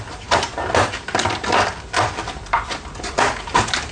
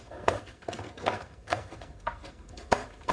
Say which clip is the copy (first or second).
second